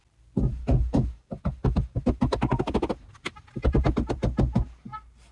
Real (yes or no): yes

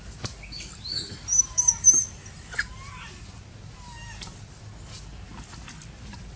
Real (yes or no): yes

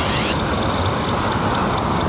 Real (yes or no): yes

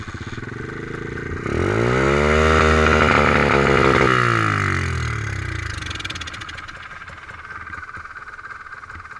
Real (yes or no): yes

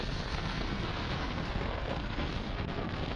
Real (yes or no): no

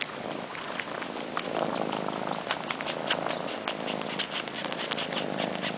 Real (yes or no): yes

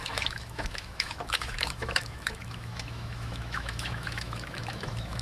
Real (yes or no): no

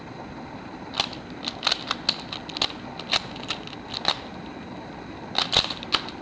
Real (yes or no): yes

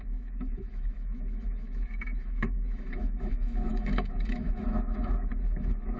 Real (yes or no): no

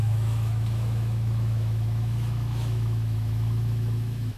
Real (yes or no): no